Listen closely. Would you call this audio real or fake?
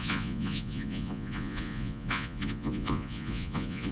fake